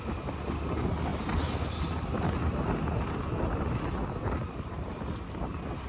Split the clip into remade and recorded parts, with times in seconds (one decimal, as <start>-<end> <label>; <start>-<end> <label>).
0.0-5.9 recorded